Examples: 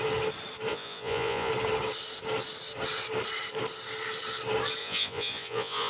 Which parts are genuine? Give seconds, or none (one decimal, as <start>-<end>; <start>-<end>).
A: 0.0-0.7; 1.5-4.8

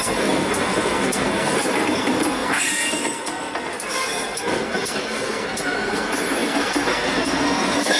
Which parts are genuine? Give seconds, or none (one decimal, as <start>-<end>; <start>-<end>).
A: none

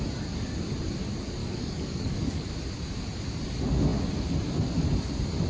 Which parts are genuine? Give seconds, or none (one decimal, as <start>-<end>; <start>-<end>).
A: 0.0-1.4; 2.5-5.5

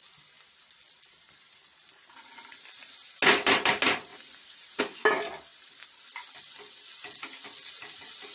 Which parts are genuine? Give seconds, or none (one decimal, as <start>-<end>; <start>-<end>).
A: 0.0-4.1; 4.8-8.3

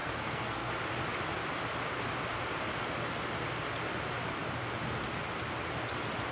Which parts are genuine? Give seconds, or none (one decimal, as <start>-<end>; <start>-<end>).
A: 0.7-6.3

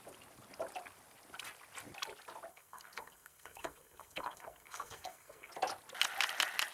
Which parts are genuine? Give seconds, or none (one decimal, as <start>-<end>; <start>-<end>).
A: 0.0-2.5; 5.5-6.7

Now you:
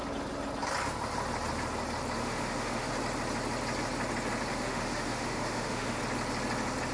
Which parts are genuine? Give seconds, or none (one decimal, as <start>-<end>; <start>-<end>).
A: 0.0-2.2; 2.9-4.5; 6.0-6.9

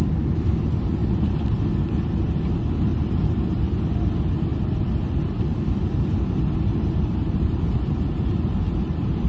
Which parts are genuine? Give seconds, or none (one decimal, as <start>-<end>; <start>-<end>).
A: 0.0-4.5